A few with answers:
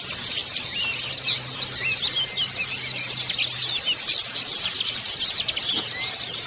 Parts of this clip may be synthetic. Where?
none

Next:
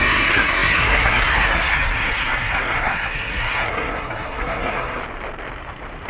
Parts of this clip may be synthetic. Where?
0.0-5.0 (codec, SNAC)

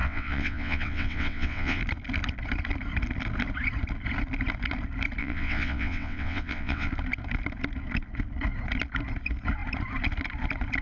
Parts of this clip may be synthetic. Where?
0.0-1.8 (vocoder, WaveNeXt); 5.2-6.9

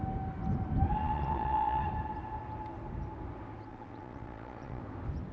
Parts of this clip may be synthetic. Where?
1.0-1.9 (vocoder, Vocos); 3.7-4.8

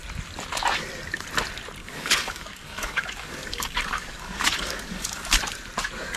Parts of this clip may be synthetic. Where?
1.8-5.3 (codec, DAC)